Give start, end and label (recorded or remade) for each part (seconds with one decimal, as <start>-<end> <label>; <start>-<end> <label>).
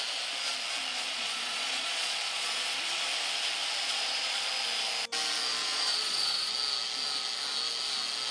0.0-0.9 recorded; 0.9-2.6 remade; 2.6-3.8 recorded; 3.8-4.5 remade; 4.5-5.6 recorded; 5.6-6.5 remade; 6.5-8.3 recorded